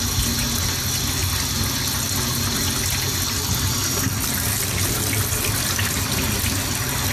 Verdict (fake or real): real